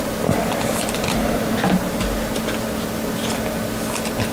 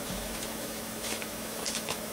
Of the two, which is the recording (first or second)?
first